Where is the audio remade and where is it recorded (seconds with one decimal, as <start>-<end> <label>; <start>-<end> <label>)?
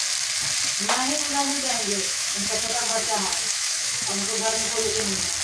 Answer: 0.0-1.5 recorded; 1.5-4.7 remade; 4.7-5.4 recorded